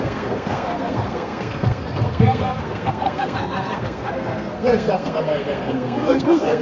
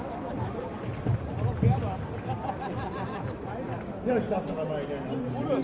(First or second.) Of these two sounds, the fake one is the first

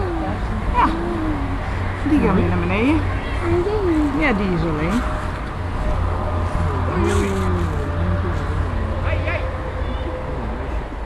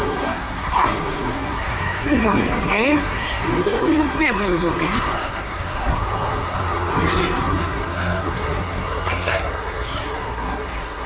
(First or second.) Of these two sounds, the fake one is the second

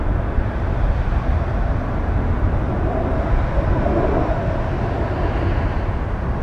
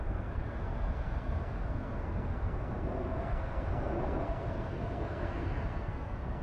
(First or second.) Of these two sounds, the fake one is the second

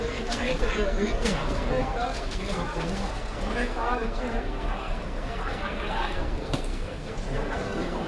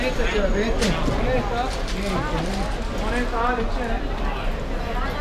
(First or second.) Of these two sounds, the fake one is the first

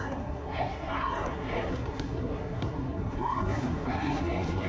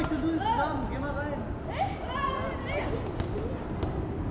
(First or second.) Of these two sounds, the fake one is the first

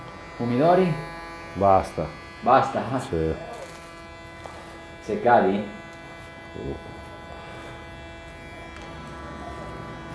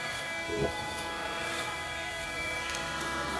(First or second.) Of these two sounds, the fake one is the second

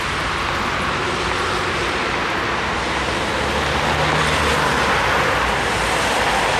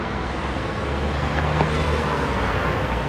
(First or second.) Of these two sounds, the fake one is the second